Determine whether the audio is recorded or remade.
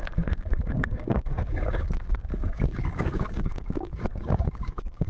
remade